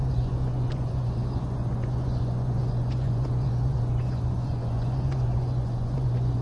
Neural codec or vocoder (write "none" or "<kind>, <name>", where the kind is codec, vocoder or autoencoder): vocoder, Vocos